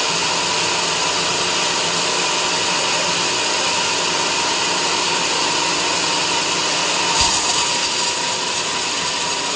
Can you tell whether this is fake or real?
real